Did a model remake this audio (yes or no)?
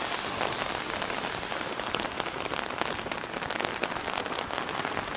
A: no